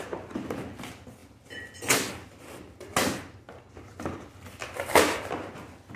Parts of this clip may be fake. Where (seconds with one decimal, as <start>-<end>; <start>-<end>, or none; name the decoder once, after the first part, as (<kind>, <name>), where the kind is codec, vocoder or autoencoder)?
none